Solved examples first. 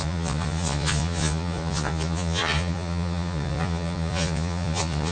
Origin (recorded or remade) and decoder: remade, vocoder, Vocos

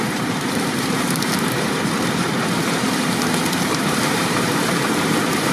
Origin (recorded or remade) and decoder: remade, vocoder, BigVGAN v2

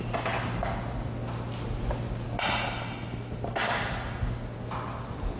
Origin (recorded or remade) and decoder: recorded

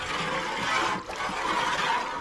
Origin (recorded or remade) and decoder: recorded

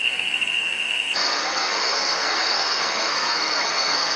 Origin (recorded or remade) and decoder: remade, codec, SNAC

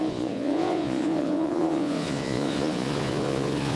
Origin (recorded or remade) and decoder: remade, vocoder, Vocos